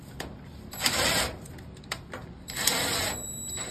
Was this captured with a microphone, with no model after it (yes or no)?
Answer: no